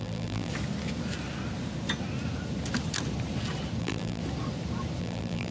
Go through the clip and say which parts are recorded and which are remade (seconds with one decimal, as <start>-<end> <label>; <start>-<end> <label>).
0.0-0.5 remade; 0.5-3.8 recorded; 3.8-4.2 remade; 4.2-5.0 recorded; 5.0-5.5 remade